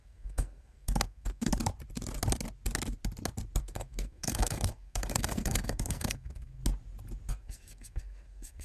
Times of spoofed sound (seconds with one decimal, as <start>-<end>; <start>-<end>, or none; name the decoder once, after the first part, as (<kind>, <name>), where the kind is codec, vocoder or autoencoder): 0.0-1.5 (codec, SNAC); 3.6-6.6; 7.3-8.6